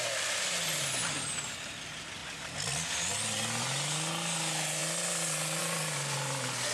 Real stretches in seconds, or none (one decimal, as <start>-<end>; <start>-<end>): 0.0-6.7